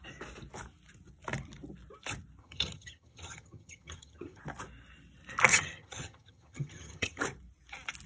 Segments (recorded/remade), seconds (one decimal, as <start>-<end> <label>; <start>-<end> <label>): 0.0-2.4 recorded; 2.4-4.4 remade; 4.4-5.5 recorded; 5.5-7.2 remade; 7.2-8.1 recorded